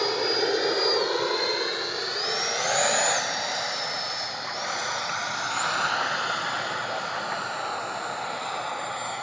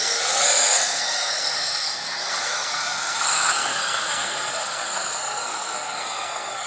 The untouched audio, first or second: first